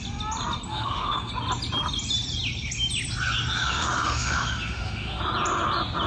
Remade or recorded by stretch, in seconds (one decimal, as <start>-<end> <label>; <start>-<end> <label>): 0.0-0.7 recorded; 0.7-1.3 remade; 1.3-3.6 recorded; 3.6-5.2 remade; 5.2-6.1 recorded